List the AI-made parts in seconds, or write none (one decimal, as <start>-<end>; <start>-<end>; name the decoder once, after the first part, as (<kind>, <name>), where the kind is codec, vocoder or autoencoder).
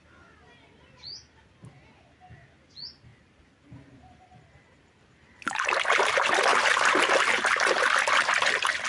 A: 3.1-6.1 (vocoder, BigVGAN v2); 6.5-7.9